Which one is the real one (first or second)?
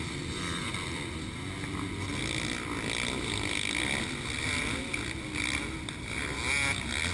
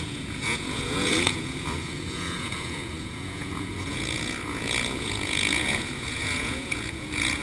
first